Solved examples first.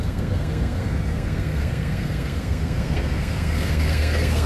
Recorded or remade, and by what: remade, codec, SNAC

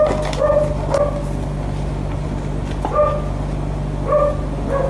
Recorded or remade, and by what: recorded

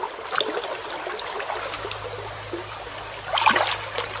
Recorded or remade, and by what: recorded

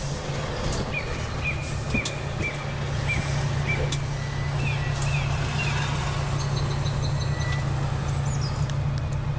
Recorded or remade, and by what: recorded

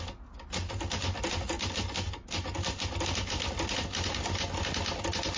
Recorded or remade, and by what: recorded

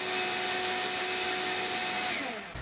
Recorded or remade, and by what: recorded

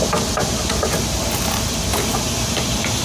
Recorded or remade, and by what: recorded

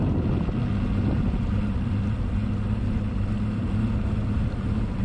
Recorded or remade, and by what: recorded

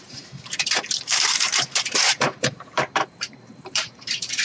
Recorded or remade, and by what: remade, vocoder, BigVGAN v2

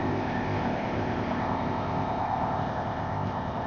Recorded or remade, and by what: remade, codec, ZipCodec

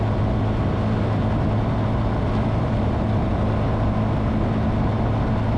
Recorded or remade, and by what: recorded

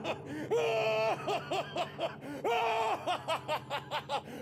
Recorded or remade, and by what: recorded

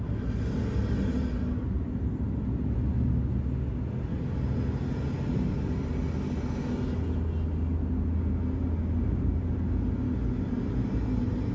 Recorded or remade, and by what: recorded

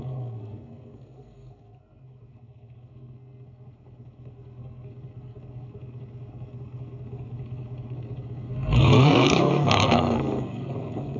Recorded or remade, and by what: remade, codec, SNAC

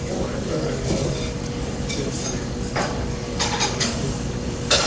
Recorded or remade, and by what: remade, codec, DAC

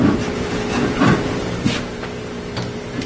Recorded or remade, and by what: remade, vocoder, BigVGAN v2